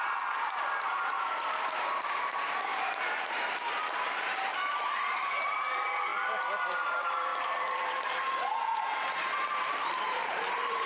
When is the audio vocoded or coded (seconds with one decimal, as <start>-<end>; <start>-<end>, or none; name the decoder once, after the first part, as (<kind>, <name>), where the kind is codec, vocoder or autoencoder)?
0.0-6.1 (vocoder, BigVGAN v2); 6.7-10.9